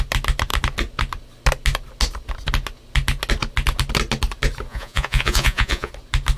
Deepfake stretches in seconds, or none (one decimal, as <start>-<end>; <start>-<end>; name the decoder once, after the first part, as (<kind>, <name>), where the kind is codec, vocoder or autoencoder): 4.7-5.9 (vocoder, Vocos)